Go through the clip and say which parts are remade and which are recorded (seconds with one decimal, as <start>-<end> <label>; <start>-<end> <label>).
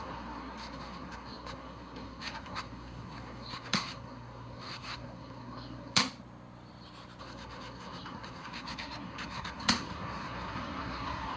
0.0-6.0 remade; 6.0-7.2 recorded; 7.2-11.4 remade